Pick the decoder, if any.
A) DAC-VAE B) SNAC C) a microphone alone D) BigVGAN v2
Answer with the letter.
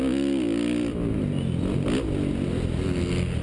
C